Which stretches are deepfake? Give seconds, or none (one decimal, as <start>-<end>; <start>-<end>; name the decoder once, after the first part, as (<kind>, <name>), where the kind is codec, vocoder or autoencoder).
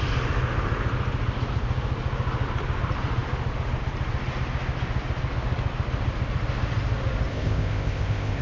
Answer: 7.3-8.4 (codec, ZipCodec)